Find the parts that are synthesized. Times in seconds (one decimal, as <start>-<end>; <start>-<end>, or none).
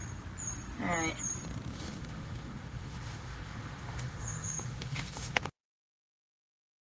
1.7-5.8